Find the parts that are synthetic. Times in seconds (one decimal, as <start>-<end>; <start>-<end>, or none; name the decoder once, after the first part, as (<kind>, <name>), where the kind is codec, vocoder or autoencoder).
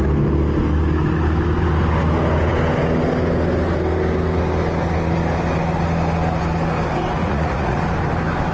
7.2-7.8 (vocoder, Vocos)